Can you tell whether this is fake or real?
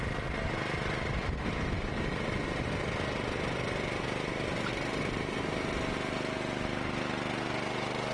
real